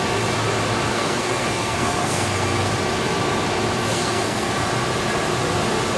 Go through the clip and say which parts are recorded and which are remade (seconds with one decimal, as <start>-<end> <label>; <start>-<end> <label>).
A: 0.0-0.9 recorded; 0.9-2.7 remade; 2.7-3.9 recorded; 3.9-4.5 remade; 4.5-6.0 recorded